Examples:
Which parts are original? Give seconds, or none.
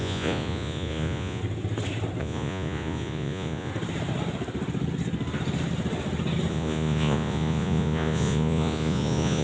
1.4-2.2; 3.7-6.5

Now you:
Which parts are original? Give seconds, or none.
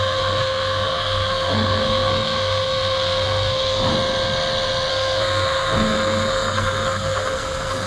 3.9-4.9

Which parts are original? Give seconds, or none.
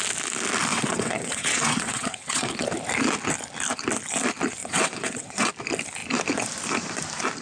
0.0-0.7; 2.5-4.6; 5.5-7.4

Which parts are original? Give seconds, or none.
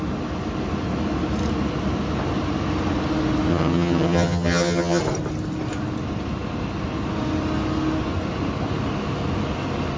0.0-3.5; 5.0-10.0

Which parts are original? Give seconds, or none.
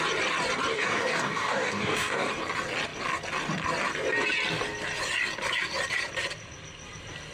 0.0-0.7; 2.3-7.3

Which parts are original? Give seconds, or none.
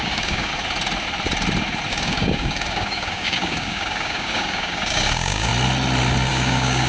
0.5-1.9; 5.5-6.3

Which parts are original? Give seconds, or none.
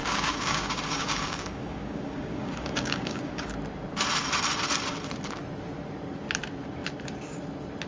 3.5-7.9